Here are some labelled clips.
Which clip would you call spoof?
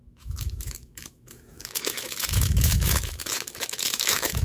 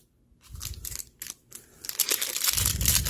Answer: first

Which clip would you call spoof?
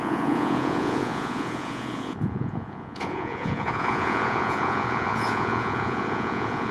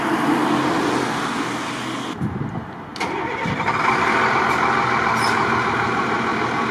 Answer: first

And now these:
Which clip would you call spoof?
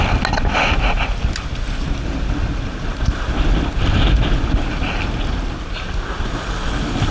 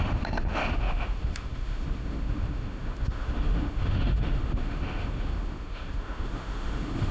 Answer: second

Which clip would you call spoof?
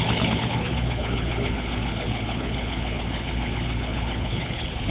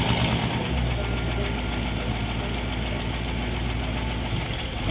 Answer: first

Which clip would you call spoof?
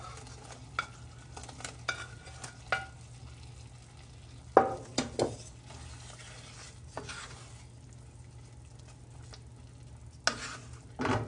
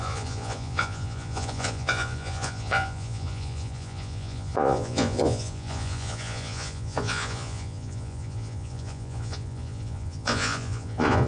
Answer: second